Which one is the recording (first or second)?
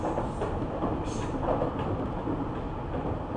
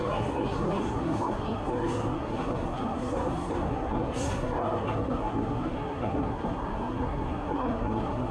first